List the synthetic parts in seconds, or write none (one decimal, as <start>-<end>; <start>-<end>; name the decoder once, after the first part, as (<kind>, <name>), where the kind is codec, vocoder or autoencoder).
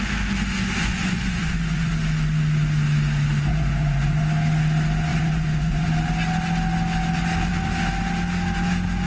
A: 0.8-1.9 (vocoder, Vocos); 3.5-4.2; 5.1-5.9